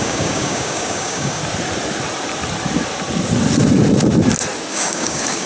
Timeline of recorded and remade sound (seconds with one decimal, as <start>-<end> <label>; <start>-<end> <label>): 0.0-1.4 remade; 1.4-4.7 recorded; 4.7-5.5 remade